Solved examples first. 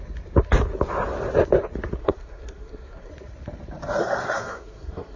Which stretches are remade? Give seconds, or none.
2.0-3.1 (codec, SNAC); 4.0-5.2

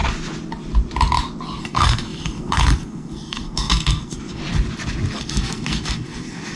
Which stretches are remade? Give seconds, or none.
1.6-4.4 (codec, SNAC); 5.2-6.6

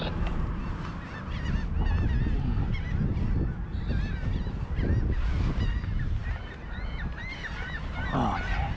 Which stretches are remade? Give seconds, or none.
none

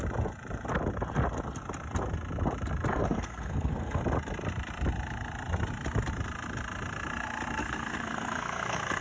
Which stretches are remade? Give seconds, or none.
2.9-4.0 (codec, SNAC); 7.6-9.0

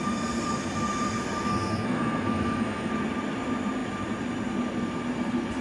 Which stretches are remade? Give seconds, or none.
1.5-2.9 (codec, SNAC)